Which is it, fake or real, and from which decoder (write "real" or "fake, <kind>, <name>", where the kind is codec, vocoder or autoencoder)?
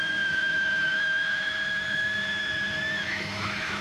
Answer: fake, autoencoder, DAC-VAE